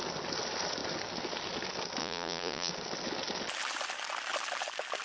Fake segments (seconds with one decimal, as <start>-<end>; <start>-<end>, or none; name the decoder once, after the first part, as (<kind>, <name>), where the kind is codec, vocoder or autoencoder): 2.0-2.7 (vocoder, Vocos)